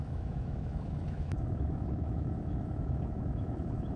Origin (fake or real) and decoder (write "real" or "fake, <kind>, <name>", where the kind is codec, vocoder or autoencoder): fake, autoencoder, DAC-VAE